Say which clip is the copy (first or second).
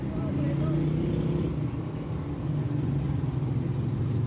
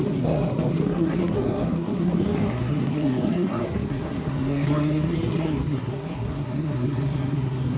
second